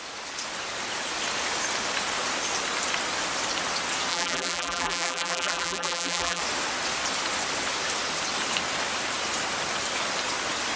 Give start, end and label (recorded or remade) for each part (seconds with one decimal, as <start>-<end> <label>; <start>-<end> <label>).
0.0-4.1 recorded; 4.1-6.4 remade; 6.4-10.8 recorded